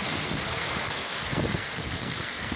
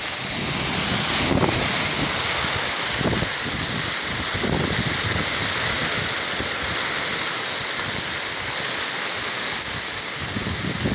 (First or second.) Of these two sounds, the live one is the second